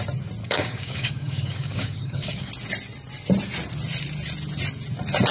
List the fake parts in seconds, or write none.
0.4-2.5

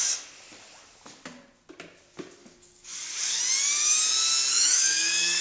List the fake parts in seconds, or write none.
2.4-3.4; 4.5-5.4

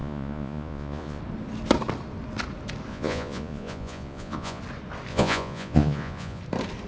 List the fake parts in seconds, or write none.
0.0-1.2; 2.9-4.6; 5.1-6.4

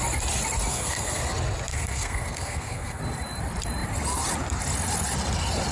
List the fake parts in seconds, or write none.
0.7-1.2; 1.7-3.0

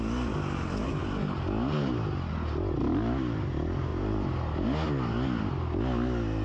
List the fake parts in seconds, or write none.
none

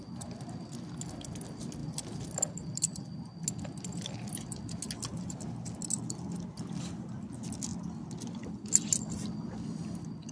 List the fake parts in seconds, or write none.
none